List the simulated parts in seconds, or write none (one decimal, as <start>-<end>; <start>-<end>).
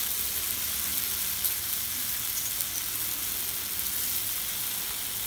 none